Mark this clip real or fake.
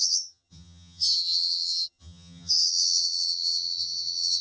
fake